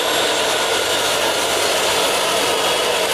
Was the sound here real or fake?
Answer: real